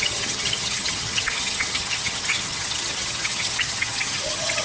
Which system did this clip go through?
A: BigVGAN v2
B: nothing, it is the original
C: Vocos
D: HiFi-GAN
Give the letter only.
D